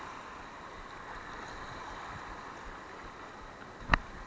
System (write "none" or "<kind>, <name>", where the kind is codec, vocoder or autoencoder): none